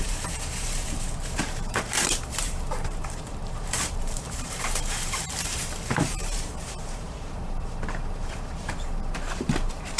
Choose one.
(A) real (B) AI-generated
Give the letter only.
B